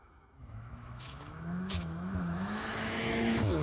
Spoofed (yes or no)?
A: yes